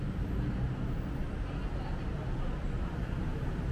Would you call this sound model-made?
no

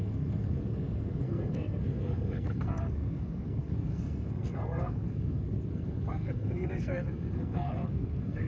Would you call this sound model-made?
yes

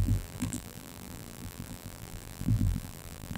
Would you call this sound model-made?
yes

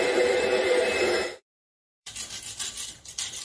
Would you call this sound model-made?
yes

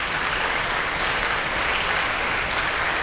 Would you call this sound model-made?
no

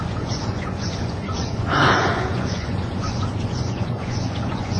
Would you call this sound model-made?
yes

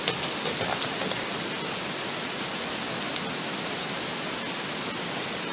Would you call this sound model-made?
no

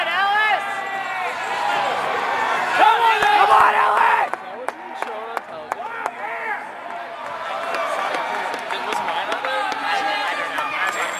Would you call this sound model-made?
no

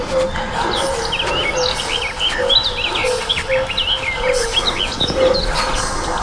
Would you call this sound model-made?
no